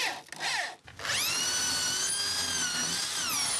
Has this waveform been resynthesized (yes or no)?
no